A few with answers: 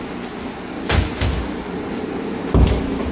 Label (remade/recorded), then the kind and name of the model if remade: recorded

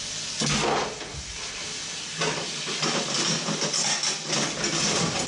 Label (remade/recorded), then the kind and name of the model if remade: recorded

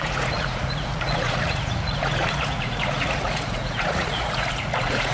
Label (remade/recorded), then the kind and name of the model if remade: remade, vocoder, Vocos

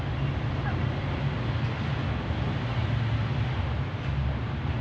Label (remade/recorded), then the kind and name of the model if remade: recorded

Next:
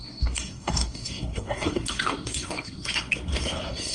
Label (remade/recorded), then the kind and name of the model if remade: remade, codec, SNAC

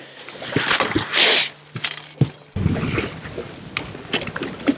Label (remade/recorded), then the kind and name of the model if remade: recorded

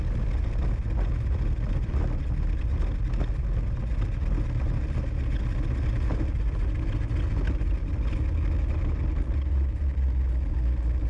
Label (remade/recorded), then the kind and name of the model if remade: recorded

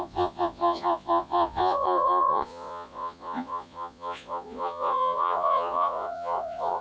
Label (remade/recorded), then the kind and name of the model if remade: remade, vocoder, Vocos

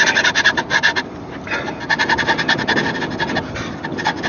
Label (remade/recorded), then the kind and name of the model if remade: recorded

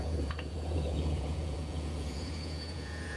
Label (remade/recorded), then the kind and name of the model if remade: remade, vocoder, Vocos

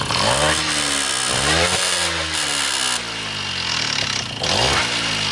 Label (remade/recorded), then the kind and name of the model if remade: recorded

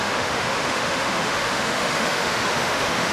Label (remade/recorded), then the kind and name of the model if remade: remade, autoencoder, DAC-VAE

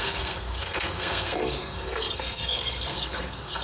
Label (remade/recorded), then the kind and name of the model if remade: remade, codec, SNAC